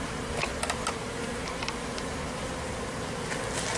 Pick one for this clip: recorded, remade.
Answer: recorded